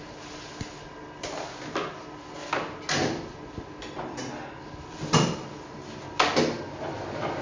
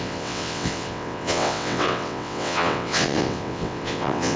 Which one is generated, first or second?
second